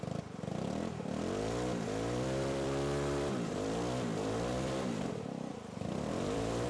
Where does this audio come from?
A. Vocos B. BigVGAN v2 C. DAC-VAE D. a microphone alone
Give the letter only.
B